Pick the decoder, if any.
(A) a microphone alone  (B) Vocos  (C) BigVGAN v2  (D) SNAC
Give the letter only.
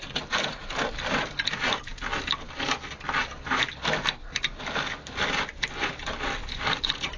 A